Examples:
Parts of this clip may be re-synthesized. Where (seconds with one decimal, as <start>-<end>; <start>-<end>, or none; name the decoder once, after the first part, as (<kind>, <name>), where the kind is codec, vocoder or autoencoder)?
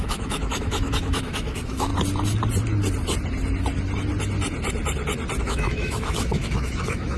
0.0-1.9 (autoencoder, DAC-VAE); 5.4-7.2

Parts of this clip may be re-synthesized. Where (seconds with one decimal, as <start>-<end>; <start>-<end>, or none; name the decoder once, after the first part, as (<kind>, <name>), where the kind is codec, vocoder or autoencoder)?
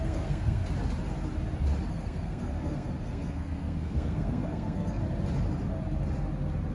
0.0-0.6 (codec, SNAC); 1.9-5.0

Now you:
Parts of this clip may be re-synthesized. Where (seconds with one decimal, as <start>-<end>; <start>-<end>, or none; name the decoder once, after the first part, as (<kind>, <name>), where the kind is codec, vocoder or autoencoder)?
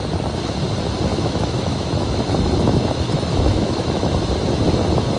1.1-4.1 (autoencoder, DAC-VAE)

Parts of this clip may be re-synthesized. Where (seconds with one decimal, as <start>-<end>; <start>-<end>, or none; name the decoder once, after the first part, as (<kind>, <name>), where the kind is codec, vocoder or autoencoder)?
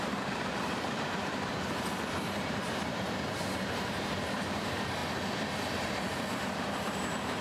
0.0-5.0 (vocoder, BigVGAN v2); 5.8-7.4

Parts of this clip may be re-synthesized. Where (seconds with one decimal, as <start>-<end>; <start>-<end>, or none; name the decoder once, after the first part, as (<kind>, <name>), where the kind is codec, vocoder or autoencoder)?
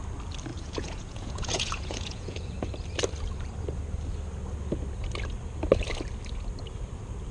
0.5-2.5 (vocoder, Vocos)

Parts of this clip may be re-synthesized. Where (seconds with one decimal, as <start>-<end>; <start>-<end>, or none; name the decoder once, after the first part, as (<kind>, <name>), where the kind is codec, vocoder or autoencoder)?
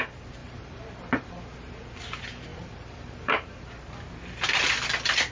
0.4-1.3 (vocoder, BigVGAN v2); 2.5-3.6